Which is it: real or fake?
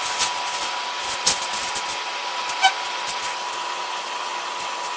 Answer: real